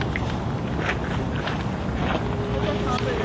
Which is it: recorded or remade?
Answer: recorded